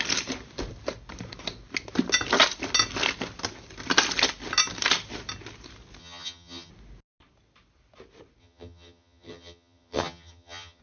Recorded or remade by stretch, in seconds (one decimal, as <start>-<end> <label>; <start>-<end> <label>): 0.0-6.0 recorded; 6.0-6.7 remade; 6.7-8.4 recorded; 8.4-10.8 remade